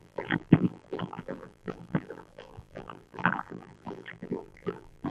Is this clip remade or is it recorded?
remade